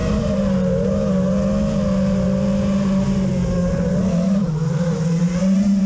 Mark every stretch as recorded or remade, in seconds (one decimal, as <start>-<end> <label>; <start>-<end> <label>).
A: 0.0-1.1 remade; 1.1-5.9 recorded

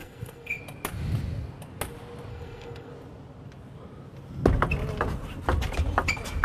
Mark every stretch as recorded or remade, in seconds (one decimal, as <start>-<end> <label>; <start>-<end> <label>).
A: 0.0-0.6 remade; 0.6-2.3 recorded; 2.3-2.9 remade; 2.9-6.4 recorded